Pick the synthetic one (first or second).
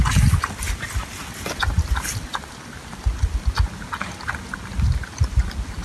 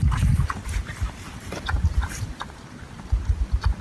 second